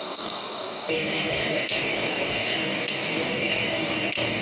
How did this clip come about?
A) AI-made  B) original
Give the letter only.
A